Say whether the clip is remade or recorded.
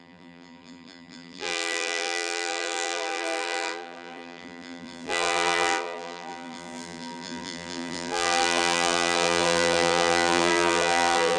remade